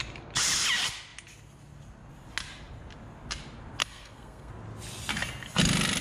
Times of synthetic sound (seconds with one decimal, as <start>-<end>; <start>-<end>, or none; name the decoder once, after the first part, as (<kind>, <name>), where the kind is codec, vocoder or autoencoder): 3.8-4.5 (codec, SNAC)